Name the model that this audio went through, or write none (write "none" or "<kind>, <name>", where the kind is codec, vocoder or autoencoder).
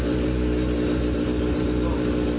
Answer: none